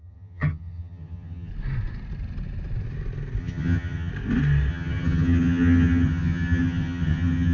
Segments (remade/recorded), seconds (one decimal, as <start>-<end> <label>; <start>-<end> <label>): 0.0-1.5 remade; 1.5-3.4 recorded; 3.4-4.1 remade; 4.1-4.7 recorded; 4.7-7.5 remade